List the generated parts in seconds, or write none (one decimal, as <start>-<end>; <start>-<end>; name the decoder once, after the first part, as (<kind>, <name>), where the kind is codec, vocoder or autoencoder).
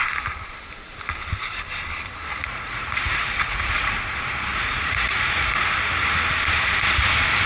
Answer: 2.3-4.0 (vocoder, Vocos); 4.5-5.6